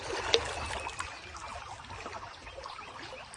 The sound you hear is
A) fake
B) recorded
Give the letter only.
B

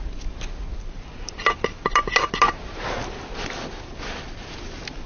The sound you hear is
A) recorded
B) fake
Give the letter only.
A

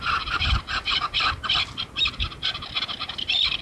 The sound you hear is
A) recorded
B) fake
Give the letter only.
A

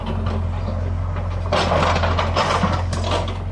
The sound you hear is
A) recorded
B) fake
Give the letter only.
A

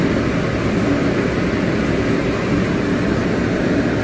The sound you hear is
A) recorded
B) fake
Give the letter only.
A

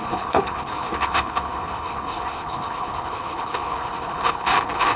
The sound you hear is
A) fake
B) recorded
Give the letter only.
A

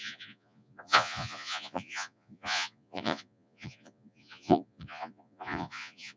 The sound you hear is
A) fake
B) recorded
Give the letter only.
A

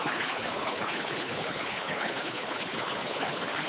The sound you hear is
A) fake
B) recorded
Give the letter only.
A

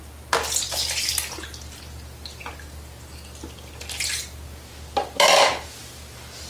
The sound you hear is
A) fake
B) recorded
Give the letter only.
B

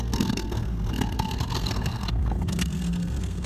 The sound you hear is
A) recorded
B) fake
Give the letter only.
B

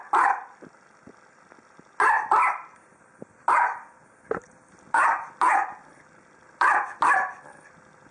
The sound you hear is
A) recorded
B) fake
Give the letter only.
A